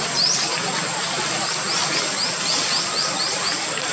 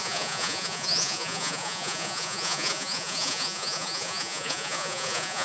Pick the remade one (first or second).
second